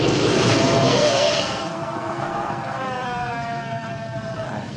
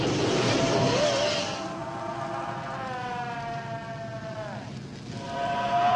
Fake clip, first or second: first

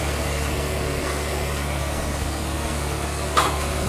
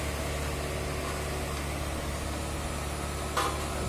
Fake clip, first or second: first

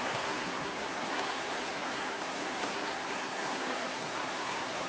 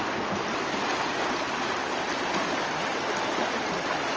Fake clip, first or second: first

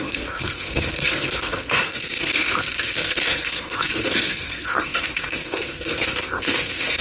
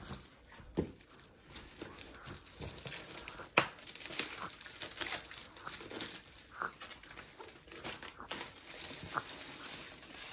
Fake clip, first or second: first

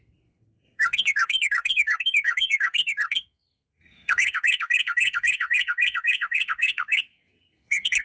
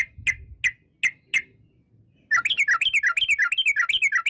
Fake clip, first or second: first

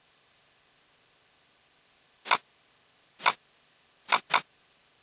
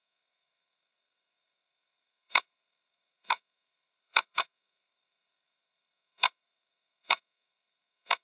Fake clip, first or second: second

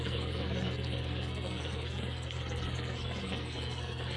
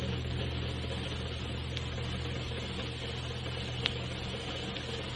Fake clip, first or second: first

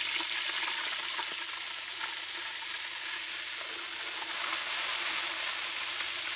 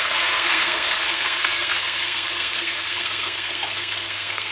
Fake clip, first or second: second